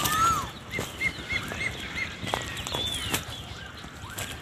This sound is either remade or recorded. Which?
recorded